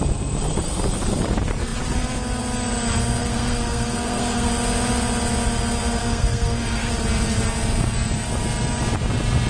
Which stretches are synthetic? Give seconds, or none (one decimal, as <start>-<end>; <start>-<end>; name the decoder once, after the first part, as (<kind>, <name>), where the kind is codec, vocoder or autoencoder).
3.2-4.5 (codec, SNAC); 6.0-6.9